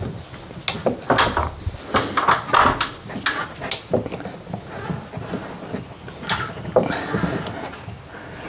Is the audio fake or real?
real